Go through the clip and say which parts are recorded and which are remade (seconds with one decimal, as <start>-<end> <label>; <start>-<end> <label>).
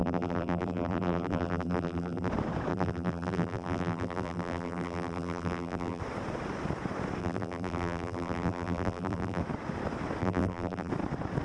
0.0-2.3 remade; 2.3-2.7 recorded; 2.7-6.0 remade; 6.0-7.2 recorded; 7.2-9.4 remade; 9.4-10.2 recorded; 10.2-10.9 remade; 10.9-11.4 recorded